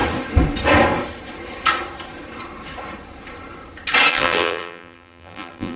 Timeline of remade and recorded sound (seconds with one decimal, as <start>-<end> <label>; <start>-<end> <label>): 0.0-4.1 recorded; 4.1-5.8 remade